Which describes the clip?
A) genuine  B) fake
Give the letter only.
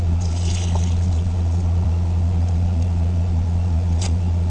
B